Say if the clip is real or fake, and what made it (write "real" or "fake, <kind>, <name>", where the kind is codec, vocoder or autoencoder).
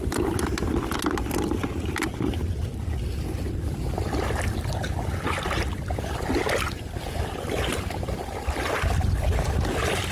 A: real